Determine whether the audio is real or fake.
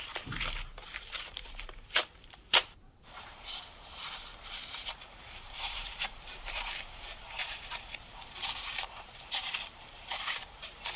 fake